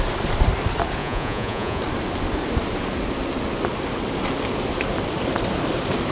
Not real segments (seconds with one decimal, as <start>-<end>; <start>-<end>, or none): 1.0-1.8

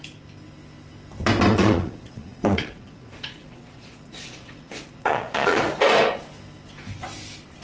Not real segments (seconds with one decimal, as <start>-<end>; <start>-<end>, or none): 1.5-5.6